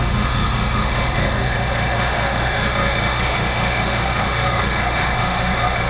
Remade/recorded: remade